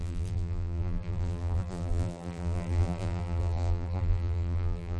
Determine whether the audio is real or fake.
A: fake